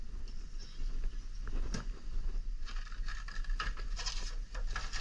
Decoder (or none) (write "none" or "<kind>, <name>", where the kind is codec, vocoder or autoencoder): none